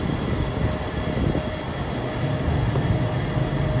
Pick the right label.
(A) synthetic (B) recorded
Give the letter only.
B